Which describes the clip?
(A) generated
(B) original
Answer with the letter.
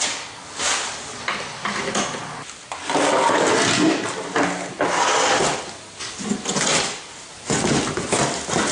B